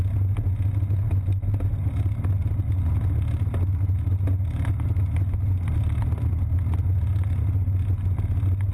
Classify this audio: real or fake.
real